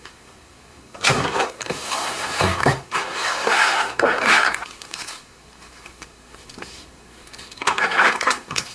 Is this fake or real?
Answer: fake